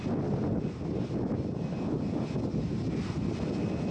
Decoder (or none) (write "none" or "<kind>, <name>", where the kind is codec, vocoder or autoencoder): none